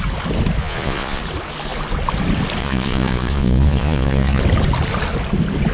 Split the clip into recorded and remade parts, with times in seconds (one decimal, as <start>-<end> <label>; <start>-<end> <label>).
0.0-0.6 recorded; 0.6-1.2 remade; 1.2-2.6 recorded; 2.6-4.4 remade; 4.4-5.7 recorded